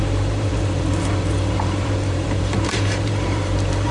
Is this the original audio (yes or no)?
no